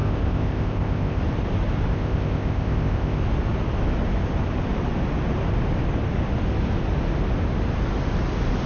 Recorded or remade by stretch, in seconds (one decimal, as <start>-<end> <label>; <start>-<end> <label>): 0.0-1.2 remade; 1.2-1.9 recorded; 1.9-3.2 remade; 3.2-8.7 recorded